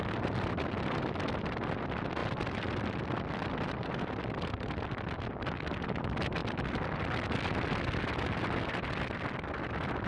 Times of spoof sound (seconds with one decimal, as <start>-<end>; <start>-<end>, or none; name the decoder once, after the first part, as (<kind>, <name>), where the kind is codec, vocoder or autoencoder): none